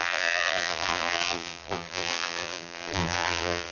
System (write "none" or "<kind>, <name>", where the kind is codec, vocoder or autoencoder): vocoder, BigVGAN v2